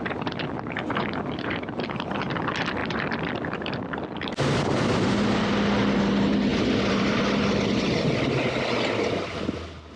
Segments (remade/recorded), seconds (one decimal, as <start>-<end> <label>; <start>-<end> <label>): 0.0-2.8 recorded; 2.8-4.2 remade; 4.2-6.5 recorded; 6.5-7.2 remade; 7.2-10.0 recorded